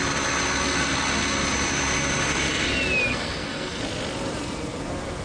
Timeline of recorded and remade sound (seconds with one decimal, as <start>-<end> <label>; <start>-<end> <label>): 0.0-3.1 recorded; 3.1-3.8 remade; 3.8-5.2 recorded